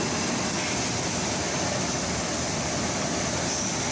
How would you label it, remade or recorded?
recorded